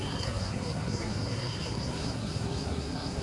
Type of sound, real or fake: fake